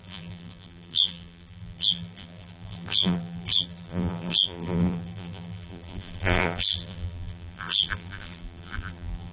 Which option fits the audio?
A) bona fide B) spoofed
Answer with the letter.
B